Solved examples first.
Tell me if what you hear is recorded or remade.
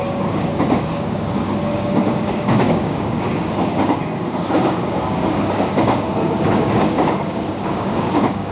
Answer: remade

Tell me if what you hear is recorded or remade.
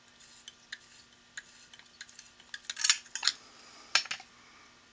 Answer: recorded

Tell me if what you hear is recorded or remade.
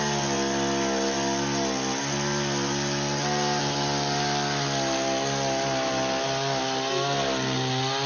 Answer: recorded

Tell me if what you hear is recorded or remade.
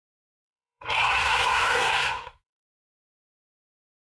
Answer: remade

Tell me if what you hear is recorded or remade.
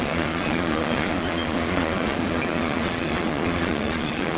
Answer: remade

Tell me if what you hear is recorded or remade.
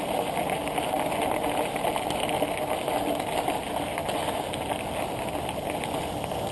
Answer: recorded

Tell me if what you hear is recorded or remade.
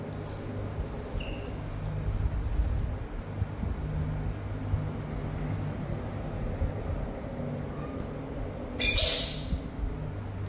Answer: recorded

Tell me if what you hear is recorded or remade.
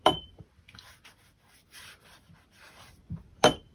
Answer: remade